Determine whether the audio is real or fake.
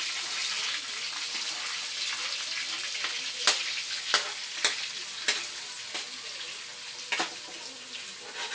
real